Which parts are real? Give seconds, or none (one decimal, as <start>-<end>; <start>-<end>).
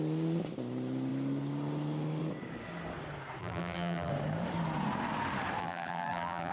0.0-3.4; 4.1-5.6